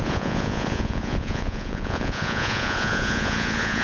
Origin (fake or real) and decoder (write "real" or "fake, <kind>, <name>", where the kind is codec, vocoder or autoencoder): fake, vocoder, Vocos